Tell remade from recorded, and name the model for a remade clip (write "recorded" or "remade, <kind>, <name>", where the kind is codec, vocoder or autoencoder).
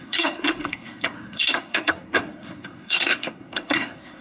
remade, codec, SNAC